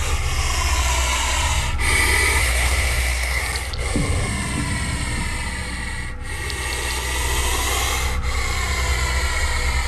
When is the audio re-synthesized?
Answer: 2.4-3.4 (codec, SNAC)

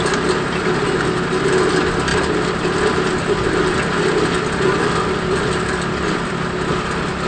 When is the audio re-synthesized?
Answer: none

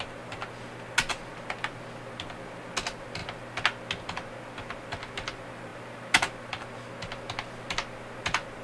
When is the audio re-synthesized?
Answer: none

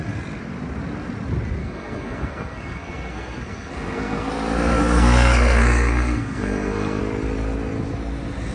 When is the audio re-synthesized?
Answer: 1.6-4.3 (codec, SNAC); 4.7-7.0

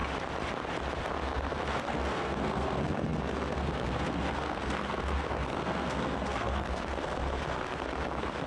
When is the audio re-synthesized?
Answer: 1.0-8.5 (codec, SNAC)

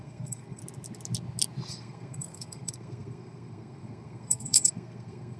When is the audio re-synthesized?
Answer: 0.0-0.6 (codec, SNAC); 1.7-5.4

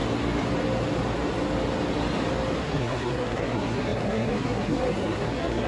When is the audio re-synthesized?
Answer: 2.6-5.7 (codec, SNAC)